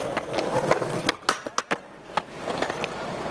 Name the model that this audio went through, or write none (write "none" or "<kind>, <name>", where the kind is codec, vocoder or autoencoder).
none